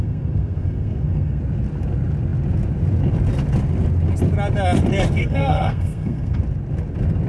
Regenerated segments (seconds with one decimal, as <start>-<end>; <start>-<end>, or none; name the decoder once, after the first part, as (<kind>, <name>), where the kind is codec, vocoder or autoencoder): 0.0-1.4 (codec, SNAC); 5.2-6.4